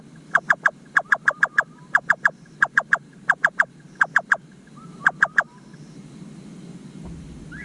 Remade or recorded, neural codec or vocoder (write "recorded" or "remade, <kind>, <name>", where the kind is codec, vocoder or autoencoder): recorded